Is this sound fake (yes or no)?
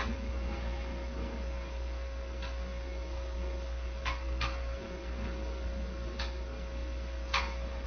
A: yes